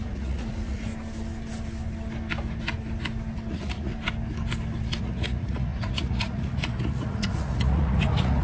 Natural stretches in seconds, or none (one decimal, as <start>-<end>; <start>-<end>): 0.9-3.5; 3.9-5.0